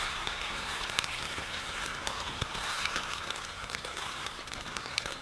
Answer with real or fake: fake